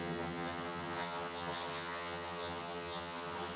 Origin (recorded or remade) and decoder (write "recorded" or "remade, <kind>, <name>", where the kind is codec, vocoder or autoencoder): remade, vocoder, HiFi-GAN